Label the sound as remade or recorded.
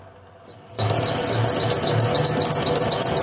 recorded